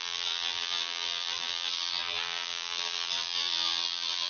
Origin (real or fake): fake